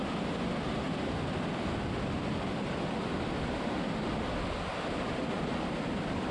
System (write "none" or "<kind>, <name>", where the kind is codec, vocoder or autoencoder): none